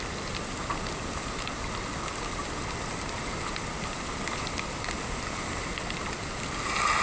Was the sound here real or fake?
real